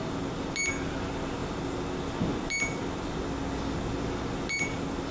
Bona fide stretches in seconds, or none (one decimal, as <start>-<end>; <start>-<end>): 0.0-5.1